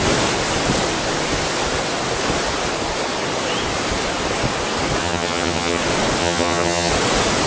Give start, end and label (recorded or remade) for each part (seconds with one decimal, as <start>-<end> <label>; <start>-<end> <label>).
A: 0.0-5.0 recorded; 5.0-5.8 remade; 5.8-6.2 recorded; 6.2-6.9 remade; 6.9-7.5 recorded